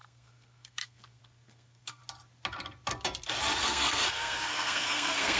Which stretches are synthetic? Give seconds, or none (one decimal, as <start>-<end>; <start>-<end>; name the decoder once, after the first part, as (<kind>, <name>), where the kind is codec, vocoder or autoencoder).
0.0-2.0 (codec, SNAC); 3.6-5.4